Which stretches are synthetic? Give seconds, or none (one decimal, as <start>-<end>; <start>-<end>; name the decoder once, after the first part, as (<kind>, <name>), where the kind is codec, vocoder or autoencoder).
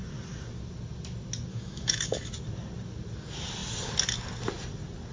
1.5-2.3 (autoencoder, DAC-VAE)